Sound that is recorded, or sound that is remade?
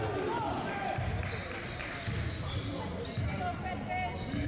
recorded